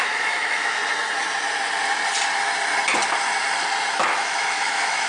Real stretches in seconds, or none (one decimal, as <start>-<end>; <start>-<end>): 0.8-3.9

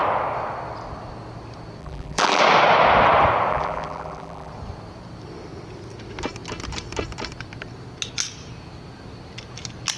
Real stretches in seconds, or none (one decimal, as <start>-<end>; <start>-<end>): 0.0-1.8; 2.4-3.5; 4.5-10.0